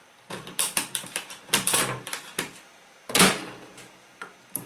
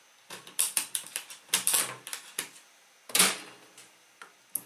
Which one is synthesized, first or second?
first